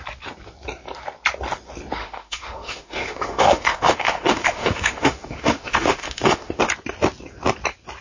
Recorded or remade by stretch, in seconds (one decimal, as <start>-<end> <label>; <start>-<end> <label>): 0.0-2.0 recorded; 2.0-6.6 remade; 6.6-8.0 recorded